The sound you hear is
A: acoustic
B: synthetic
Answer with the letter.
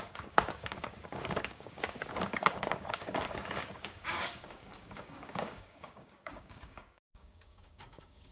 B